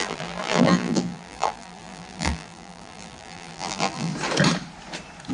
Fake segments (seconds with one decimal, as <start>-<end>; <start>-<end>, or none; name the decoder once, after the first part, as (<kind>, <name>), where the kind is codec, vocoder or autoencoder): 0.0-4.1 (vocoder, BigVGAN v2)